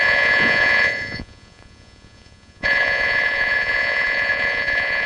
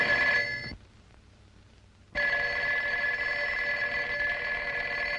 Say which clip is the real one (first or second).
second